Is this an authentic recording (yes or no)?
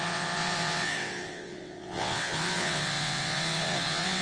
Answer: no